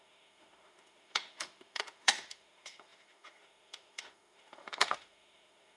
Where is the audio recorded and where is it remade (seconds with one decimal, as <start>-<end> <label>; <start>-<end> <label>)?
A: 0.0-5.8 remade